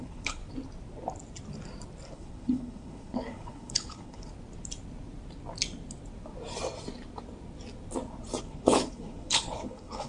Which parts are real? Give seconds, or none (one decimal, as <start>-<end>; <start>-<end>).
0.4-2.1; 4.3-8.4